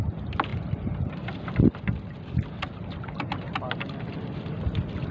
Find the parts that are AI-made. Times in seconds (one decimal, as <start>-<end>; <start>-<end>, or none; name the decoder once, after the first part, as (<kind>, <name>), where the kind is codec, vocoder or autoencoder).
none